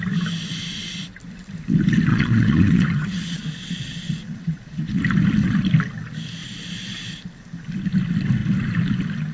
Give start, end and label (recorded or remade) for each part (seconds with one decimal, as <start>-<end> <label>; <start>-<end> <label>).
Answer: 0.0-2.1 recorded; 2.1-5.0 remade; 5.0-9.3 recorded